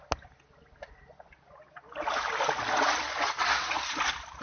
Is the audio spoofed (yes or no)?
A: no